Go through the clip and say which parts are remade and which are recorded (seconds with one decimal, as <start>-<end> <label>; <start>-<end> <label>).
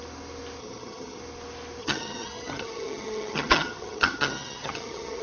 0.0-0.6 recorded; 0.6-1.2 remade; 1.2-1.8 recorded; 1.8-5.2 remade